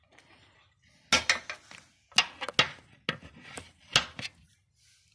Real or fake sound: real